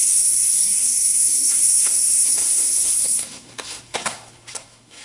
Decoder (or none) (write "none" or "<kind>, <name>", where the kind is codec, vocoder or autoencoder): codec, SNAC